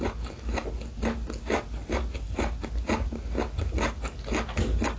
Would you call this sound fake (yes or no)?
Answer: no